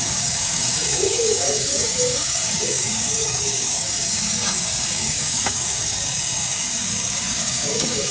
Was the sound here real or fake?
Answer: fake